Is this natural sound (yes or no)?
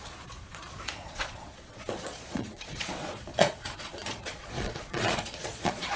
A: no